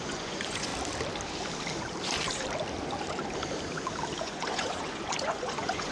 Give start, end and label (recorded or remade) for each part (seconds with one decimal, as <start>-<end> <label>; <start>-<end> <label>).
0.0-0.7 remade; 0.7-4.2 recorded; 4.2-5.9 remade